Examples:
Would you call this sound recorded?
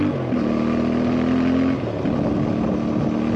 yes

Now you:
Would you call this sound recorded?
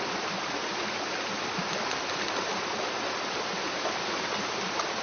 yes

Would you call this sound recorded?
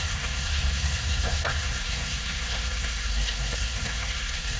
no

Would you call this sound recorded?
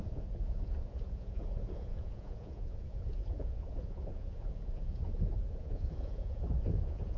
no